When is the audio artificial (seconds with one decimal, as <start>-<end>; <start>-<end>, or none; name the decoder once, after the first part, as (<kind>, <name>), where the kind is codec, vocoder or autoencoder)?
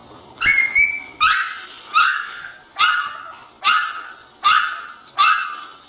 2.0-2.6 (codec, SNAC)